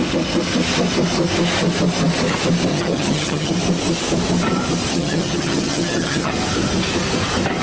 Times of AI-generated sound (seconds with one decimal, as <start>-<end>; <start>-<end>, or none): 2.7-3.5; 4.9-6.3